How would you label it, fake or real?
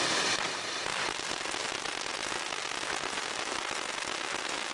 real